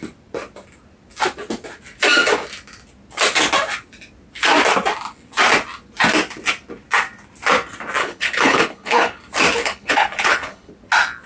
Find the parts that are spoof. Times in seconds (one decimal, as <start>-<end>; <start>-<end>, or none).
8.0-9.2; 9.6-10.7